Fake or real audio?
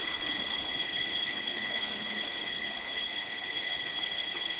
fake